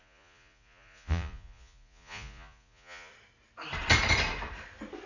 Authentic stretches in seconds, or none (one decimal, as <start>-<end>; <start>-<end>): 3.1-5.1